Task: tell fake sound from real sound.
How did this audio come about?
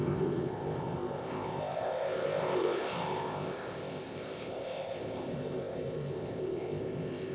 fake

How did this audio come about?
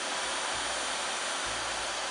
real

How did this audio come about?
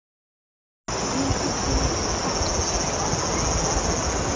real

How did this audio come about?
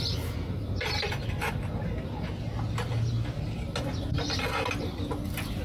real